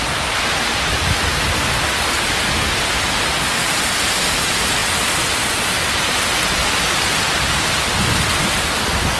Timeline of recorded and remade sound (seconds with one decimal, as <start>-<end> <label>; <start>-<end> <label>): 0.0-9.2 recorded